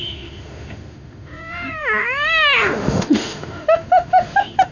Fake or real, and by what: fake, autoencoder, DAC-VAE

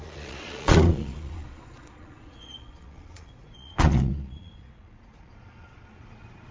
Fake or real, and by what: fake, vocoder, Vocos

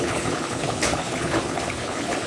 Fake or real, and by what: fake, codec, HILCodec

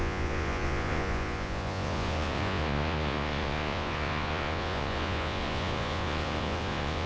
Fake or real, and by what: fake, vocoder, Vocos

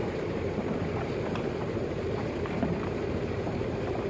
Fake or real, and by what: fake, vocoder, BigVGAN v2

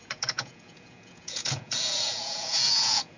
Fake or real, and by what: fake, vocoder, Vocos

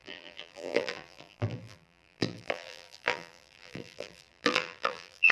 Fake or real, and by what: fake, vocoder, BigVGAN v2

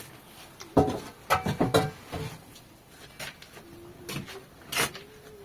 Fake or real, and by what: real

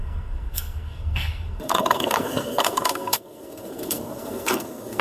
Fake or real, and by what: fake, codec, SNAC